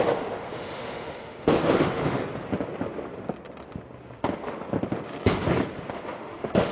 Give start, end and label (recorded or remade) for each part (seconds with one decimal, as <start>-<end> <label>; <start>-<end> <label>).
0.0-2.2 remade; 2.2-5.9 recorded; 5.9-6.7 remade